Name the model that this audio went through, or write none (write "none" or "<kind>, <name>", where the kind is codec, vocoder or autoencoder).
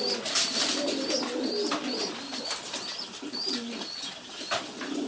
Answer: none